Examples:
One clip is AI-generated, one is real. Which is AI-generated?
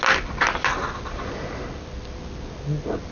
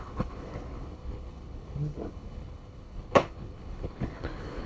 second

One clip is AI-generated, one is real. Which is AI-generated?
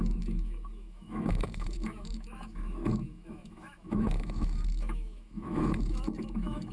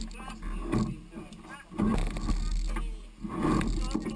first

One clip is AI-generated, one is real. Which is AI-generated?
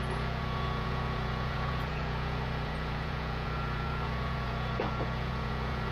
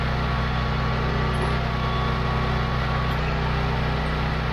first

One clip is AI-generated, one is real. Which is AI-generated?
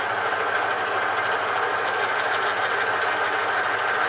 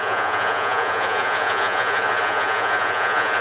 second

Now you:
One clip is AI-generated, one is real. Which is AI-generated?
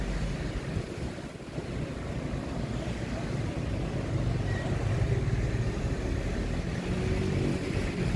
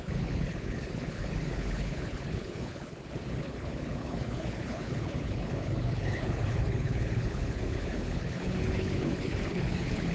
second